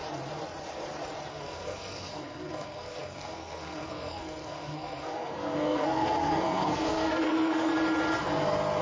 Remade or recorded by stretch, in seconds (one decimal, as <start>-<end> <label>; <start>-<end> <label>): 0.0-1.3 recorded; 1.3-7.7 remade; 7.7-8.8 recorded